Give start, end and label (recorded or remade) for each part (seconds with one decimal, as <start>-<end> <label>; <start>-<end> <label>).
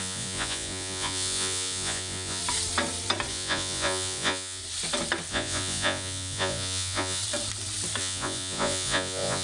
0.0-2.4 remade; 2.4-3.3 recorded; 3.3-4.6 remade; 4.6-5.3 recorded; 5.3-7.2 remade; 7.2-8.0 recorded; 8.0-9.4 remade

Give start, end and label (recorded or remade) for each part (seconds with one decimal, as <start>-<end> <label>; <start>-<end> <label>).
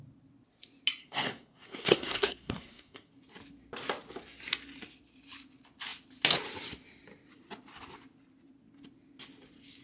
0.0-1.0 recorded; 1.0-3.1 remade; 3.1-9.8 recorded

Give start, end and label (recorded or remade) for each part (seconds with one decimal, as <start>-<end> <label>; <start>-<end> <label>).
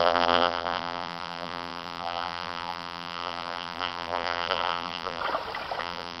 0.0-5.2 remade; 5.2-5.8 recorded; 5.8-6.2 remade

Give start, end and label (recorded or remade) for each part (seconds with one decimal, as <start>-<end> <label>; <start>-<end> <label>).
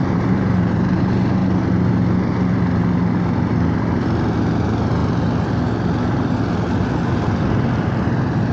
0.0-1.0 remade; 1.0-8.5 recorded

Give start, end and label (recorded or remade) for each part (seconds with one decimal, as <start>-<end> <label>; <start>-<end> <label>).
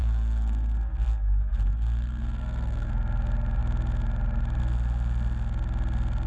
0.0-2.9 remade; 2.9-6.3 recorded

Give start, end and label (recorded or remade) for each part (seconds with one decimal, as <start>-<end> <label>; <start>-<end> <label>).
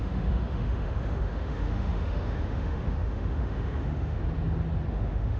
0.0-4.2 remade; 4.2-4.9 recorded; 4.9-5.4 remade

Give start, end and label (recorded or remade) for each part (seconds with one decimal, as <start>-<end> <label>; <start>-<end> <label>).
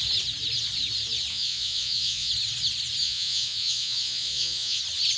0.0-1.3 recorded; 1.3-2.3 remade; 2.3-3.0 recorded; 3.0-4.8 remade; 4.8-5.2 recorded